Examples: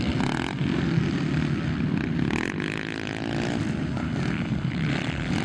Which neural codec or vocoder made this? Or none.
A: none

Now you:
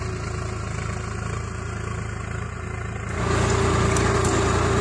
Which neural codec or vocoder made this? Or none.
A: none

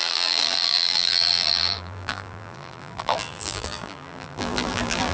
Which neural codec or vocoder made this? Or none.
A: vocoder, BigVGAN v2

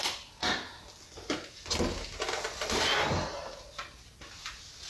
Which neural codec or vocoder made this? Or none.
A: none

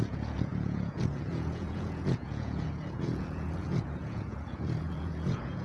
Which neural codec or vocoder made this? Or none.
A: vocoder, Vocos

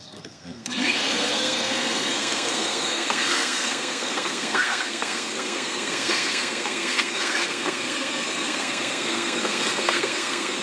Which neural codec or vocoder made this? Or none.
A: codec, SNAC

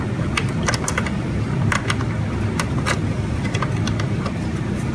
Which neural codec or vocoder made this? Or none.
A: none